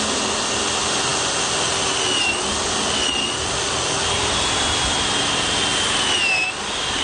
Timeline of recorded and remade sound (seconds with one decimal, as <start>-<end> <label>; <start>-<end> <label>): 0.0-7.0 recorded